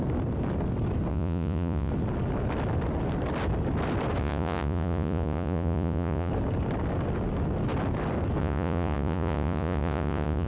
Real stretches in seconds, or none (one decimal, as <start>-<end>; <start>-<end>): 0.0-1.1; 1.9-4.2; 6.3-8.4

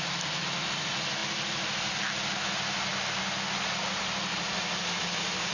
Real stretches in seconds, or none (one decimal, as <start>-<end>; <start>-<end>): 0.0-5.5

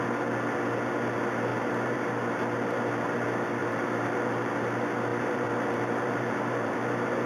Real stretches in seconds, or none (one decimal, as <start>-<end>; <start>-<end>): 0.0-1.5; 2.1-3.6; 4.5-5.1

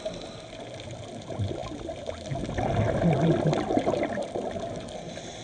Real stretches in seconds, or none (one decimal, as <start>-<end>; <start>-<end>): 0.0-5.4

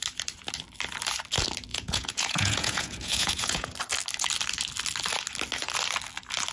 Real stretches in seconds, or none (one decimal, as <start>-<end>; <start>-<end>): 0.0-1.7; 3.7-6.5

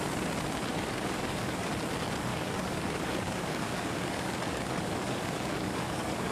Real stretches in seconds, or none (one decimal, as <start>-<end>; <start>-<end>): 0.0-0.7; 1.7-2.3

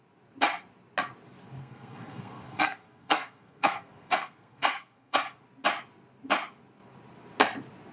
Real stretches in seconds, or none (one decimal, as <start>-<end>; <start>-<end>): 0.0-1.6; 5.4-7.9

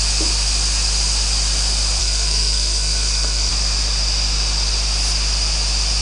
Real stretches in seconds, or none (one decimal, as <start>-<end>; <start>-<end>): 0.0-2.0; 3.5-6.0